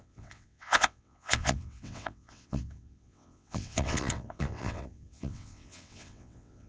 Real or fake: fake